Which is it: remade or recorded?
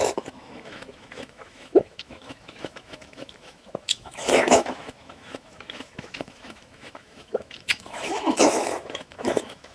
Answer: remade